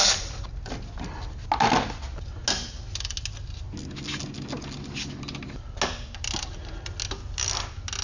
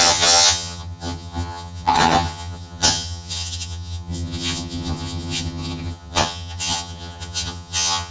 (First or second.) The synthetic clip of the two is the second